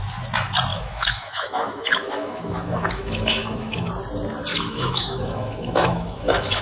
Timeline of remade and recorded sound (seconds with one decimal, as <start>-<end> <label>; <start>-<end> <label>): 0.0-0.7 recorded; 0.7-3.9 remade; 3.9-4.5 recorded; 4.5-6.6 remade